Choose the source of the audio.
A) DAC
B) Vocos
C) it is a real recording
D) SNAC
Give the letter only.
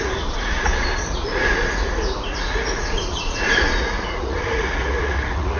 B